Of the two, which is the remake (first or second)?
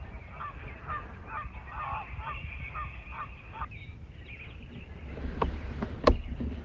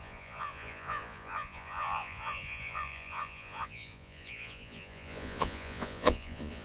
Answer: second